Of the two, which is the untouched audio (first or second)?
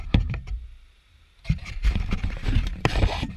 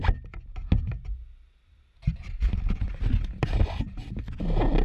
second